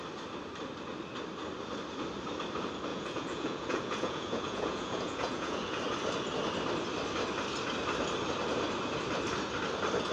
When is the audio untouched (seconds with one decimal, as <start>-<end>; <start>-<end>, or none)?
0.0-2.9; 5.8-10.1